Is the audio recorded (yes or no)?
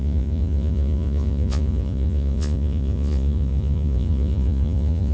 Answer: no